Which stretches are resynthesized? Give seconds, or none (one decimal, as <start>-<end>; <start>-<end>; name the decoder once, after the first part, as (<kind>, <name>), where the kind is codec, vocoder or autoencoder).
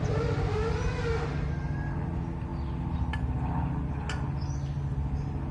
none